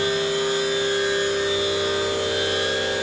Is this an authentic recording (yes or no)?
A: yes